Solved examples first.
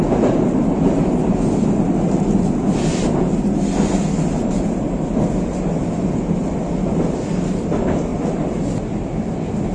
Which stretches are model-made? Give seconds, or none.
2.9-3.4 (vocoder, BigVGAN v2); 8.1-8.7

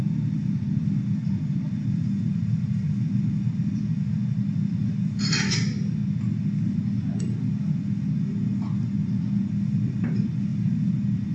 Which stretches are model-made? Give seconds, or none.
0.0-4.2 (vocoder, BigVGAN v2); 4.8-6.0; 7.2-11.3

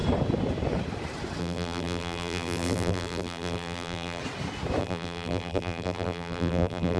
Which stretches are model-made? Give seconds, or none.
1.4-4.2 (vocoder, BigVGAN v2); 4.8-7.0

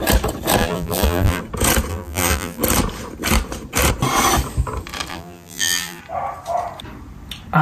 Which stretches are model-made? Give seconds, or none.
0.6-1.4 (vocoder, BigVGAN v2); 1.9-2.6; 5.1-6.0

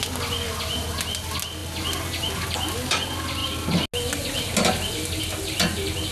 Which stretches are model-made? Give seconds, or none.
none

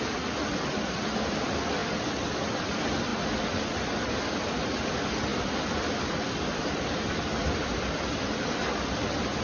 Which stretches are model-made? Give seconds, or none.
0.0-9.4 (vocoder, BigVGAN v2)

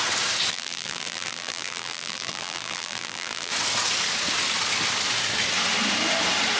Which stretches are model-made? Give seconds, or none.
0.5-3.5 (vocoder, BigVGAN v2)

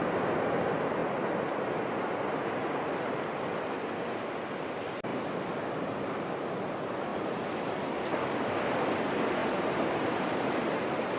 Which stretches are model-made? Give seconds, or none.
9.4-11.2 (vocoder, BigVGAN v2)